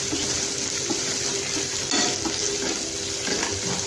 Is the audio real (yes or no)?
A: yes